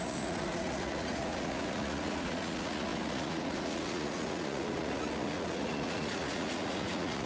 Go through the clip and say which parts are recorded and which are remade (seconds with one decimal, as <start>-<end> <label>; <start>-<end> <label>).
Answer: 0.0-7.3 remade